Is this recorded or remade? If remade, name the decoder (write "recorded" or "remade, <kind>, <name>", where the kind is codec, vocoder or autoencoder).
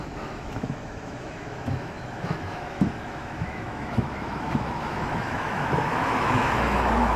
remade, autoencoder, DAC-VAE